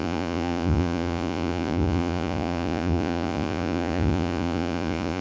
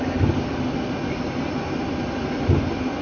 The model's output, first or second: first